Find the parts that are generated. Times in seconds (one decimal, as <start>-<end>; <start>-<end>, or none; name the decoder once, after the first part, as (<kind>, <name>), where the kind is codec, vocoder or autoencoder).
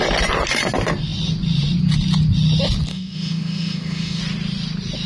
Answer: 2.9-4.2 (autoencoder, DAC-VAE)